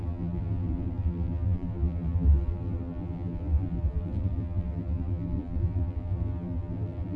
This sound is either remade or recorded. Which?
remade